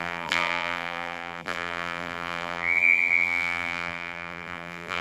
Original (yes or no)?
no